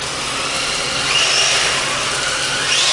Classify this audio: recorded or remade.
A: recorded